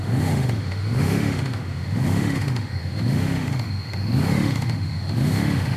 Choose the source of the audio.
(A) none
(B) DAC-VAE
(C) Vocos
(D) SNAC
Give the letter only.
B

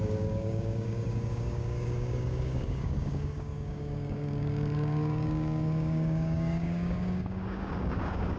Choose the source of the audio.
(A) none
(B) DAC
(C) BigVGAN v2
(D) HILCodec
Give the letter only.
B